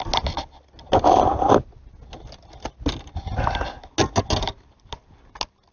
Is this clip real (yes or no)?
yes